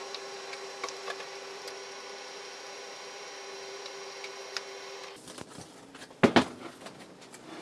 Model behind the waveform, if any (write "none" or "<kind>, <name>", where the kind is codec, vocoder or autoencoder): none